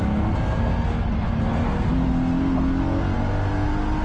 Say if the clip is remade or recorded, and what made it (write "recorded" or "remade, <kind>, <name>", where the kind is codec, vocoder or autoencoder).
recorded